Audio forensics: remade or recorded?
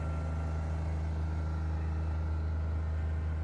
recorded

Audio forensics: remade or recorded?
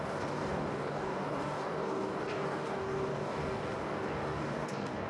remade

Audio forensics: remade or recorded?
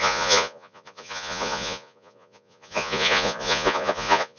remade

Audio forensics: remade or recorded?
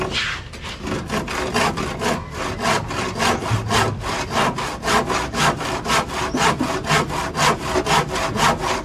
recorded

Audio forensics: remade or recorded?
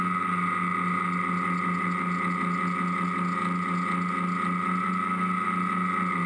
recorded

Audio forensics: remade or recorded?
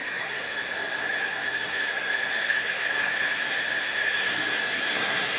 remade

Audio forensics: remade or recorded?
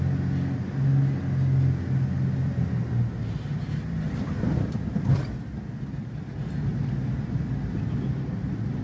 recorded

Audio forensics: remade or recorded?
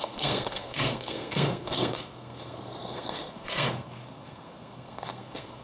remade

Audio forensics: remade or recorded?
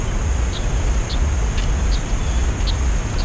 recorded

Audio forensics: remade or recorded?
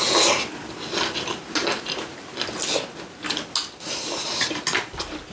recorded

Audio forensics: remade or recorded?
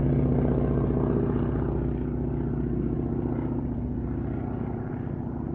remade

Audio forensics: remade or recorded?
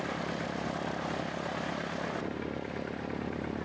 recorded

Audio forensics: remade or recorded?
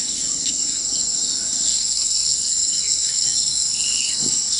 remade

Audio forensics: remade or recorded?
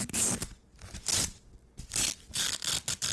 recorded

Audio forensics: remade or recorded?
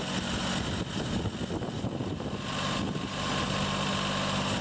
recorded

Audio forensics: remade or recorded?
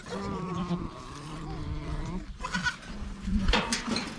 remade